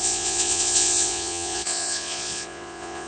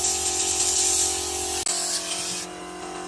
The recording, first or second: second